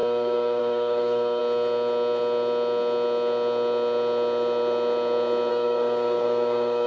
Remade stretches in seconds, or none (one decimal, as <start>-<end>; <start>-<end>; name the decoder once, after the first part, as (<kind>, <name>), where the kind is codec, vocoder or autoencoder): 0.0-1.4 (codec, DAC); 5.5-6.9